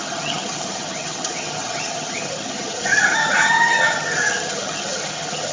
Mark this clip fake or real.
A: fake